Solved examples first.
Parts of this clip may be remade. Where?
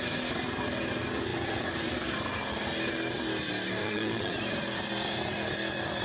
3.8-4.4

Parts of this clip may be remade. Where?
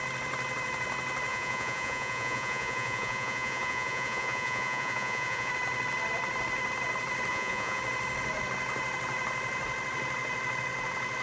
1.3-5.5; 7.3-7.8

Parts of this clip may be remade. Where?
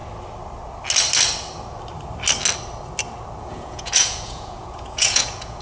3.4-5.6